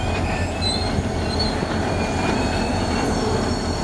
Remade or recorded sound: recorded